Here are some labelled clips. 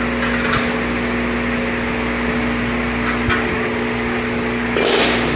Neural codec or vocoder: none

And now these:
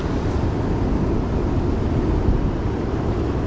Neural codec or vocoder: none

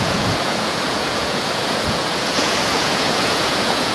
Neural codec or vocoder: vocoder, Vocos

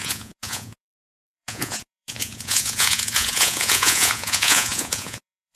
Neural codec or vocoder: vocoder, Vocos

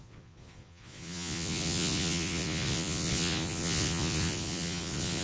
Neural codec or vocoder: vocoder, Vocos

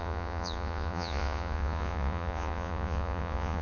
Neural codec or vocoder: vocoder, Vocos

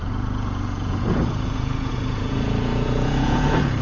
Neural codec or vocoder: vocoder, Vocos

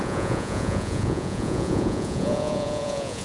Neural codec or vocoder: vocoder, Vocos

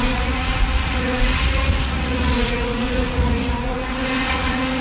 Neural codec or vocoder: vocoder, Vocos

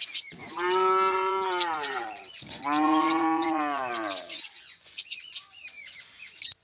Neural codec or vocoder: vocoder, Vocos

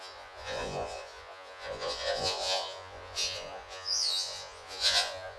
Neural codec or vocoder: vocoder, Vocos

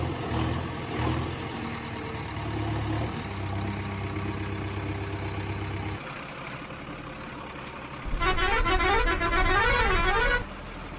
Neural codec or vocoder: none